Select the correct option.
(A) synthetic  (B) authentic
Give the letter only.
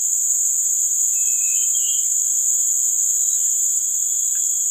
A